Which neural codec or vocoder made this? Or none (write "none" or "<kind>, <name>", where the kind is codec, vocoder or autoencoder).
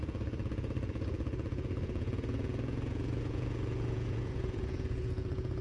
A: vocoder, Vocos